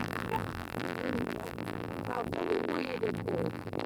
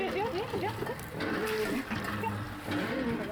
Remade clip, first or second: first